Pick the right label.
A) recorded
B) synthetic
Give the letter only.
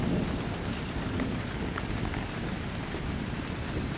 A